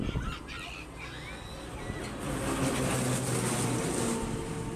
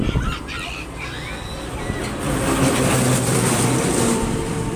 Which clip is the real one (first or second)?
first